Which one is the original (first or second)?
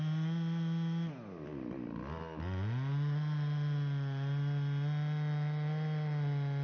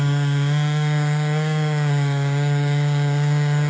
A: first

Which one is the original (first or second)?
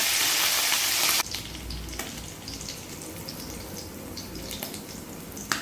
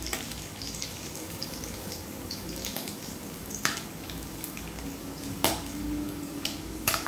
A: first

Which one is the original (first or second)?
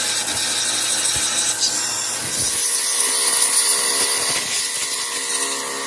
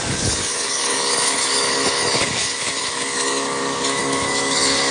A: first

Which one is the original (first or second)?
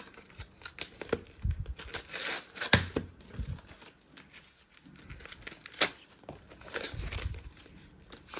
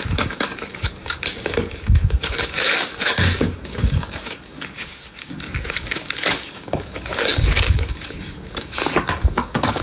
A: first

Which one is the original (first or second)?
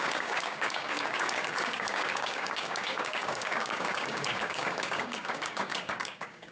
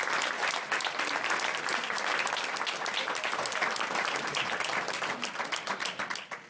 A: second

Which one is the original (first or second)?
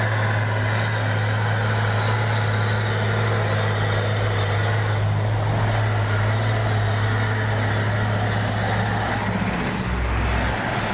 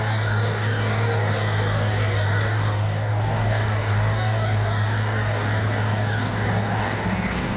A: first